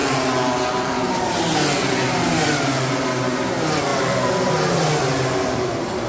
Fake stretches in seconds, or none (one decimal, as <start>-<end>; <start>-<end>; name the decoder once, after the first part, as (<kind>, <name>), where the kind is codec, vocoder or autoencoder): none